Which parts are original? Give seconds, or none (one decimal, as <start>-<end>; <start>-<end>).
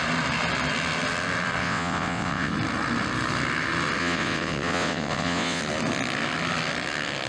0.0-1.6; 2.5-4.0; 5.6-7.3